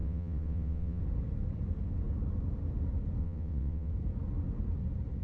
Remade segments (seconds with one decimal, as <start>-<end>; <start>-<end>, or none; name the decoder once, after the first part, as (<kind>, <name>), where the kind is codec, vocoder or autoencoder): 0.0-1.0 (vocoder, WaveNeXt); 3.2-3.9